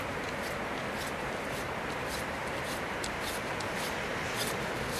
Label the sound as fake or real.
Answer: fake